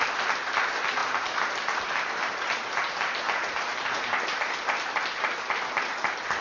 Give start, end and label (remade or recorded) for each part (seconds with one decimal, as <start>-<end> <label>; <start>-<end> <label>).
0.0-1.0 remade; 1.0-3.0 recorded; 3.0-3.7 remade; 3.7-5.4 recorded; 5.4-6.4 remade